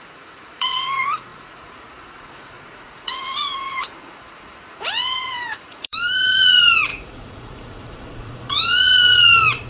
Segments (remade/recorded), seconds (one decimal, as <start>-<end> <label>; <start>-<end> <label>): 0.0-9.7 remade